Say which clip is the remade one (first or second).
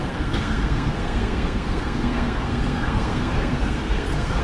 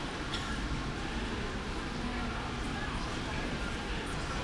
first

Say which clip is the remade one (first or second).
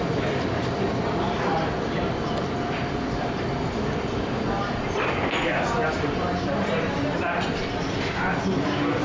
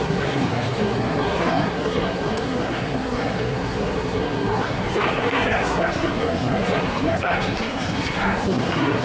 second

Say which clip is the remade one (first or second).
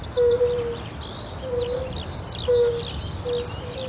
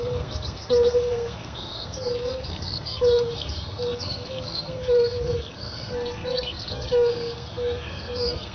second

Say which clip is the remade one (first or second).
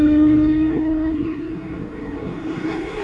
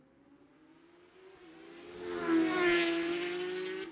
first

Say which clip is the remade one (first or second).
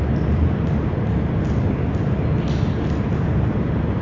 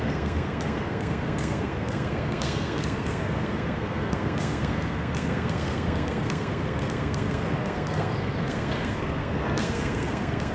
second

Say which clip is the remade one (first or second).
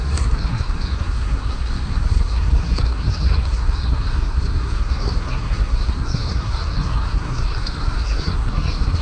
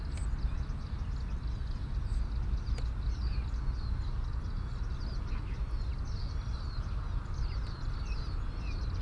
first